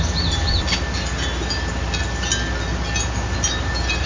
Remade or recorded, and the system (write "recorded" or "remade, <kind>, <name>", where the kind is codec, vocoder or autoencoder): recorded